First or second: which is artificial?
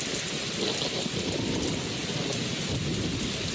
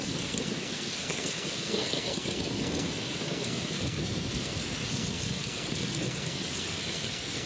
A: second